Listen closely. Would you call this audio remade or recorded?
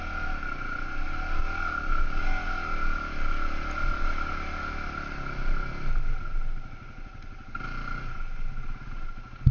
recorded